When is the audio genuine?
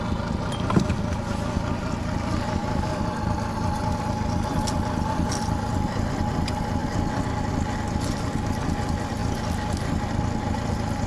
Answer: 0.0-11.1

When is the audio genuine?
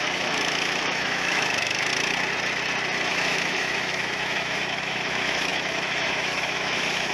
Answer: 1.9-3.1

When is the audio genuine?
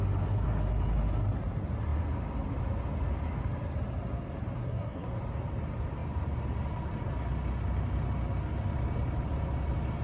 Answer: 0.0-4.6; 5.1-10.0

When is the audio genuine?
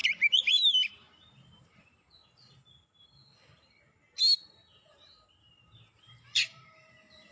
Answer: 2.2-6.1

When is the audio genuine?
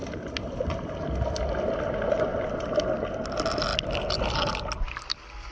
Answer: 0.0-5.5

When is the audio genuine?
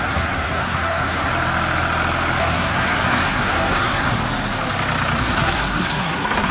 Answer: 1.3-2.4; 4.2-5.2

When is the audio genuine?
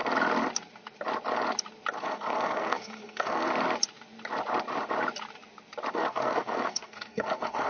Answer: 0.0-2.0; 3.5-5.9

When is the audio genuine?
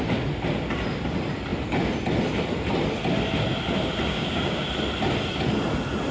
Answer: 0.0-4.1; 4.7-6.1